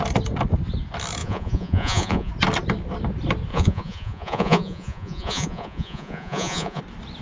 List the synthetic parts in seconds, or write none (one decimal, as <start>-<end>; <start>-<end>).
1.2-2.3; 3.5-6.8